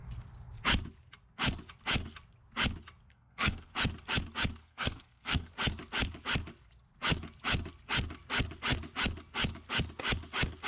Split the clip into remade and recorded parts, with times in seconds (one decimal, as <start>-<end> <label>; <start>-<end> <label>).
0.0-3.1 recorded; 3.1-3.7 remade; 3.7-4.6 recorded; 4.6-5.5 remade; 5.5-10.7 recorded